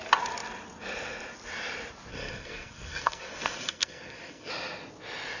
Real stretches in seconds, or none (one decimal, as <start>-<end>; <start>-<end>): 0.0-2.1; 4.5-5.4